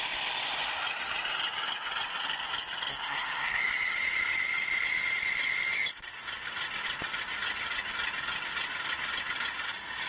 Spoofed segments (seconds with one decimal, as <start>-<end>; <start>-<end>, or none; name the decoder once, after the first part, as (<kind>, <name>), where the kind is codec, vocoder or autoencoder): 2.9-3.6 (codec, SNAC)